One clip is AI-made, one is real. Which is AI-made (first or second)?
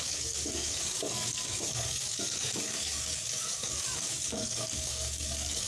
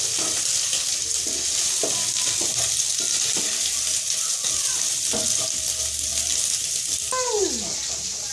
first